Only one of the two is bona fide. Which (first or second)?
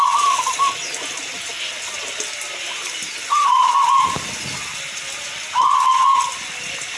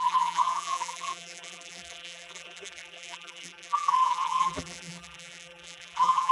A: first